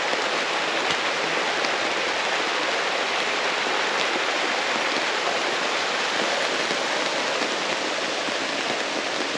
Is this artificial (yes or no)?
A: no